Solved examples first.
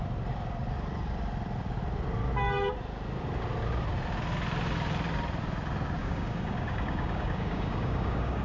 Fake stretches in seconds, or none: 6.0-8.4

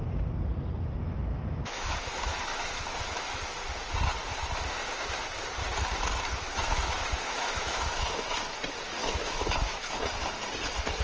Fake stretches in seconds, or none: 1.0-3.4; 6.3-8.3; 9.0-10.0

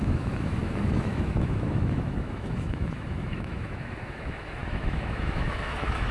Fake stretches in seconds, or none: 0.0-6.1

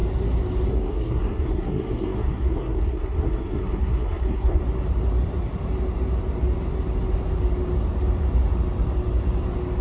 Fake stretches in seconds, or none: 0.7-4.6

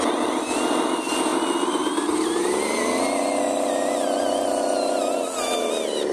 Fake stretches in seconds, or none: none